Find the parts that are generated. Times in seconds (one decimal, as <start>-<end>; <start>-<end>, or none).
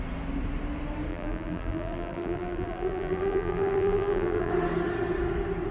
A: 1.1-4.5